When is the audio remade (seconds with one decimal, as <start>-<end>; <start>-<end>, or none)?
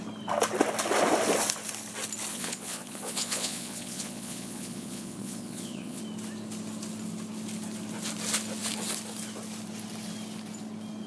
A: 2.3-6.0